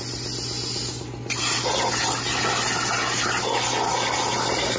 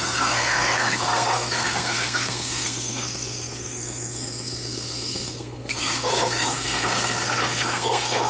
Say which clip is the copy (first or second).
second